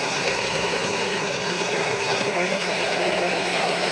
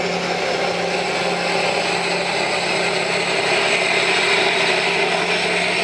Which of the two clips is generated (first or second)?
first